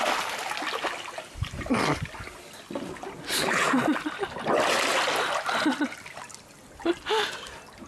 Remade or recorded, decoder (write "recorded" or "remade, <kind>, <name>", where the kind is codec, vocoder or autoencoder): recorded